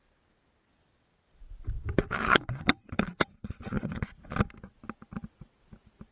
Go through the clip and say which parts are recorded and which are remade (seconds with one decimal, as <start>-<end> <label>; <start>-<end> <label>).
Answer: 0.0-0.7 recorded; 0.7-4.4 remade; 4.4-6.1 recorded